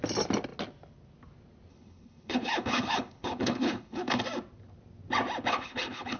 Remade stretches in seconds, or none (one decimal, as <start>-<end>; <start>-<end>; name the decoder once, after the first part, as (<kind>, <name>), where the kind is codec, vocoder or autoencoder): 1.7-4.2 (codec, HILCodec); 5.5-6.2